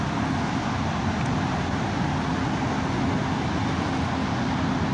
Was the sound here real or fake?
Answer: real